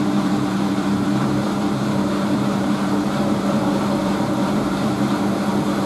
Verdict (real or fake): fake